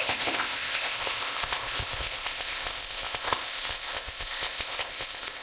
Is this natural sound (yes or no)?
no